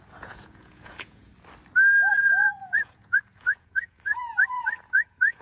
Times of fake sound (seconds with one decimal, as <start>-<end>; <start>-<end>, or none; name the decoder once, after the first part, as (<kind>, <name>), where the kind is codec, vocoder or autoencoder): 0.0-1.3 (vocoder, Vocos); 2.1-5.4